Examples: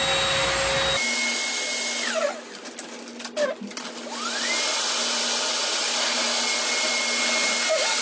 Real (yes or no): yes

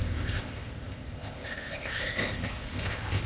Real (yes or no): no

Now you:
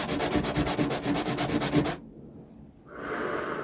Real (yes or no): yes